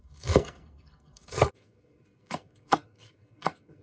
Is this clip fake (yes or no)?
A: yes